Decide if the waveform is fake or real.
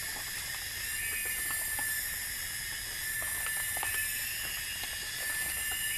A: real